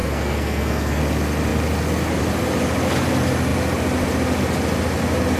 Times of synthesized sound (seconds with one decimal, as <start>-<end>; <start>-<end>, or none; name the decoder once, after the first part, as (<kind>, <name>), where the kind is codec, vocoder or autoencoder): 0.0-1.0 (codec, SNAC)